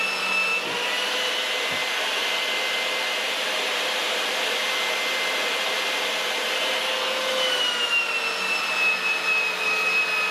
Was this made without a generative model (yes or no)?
yes